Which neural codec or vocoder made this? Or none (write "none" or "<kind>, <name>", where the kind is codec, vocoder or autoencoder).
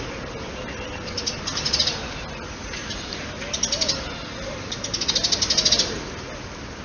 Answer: none